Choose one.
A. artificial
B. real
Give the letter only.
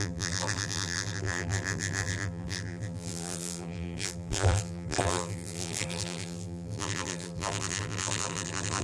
A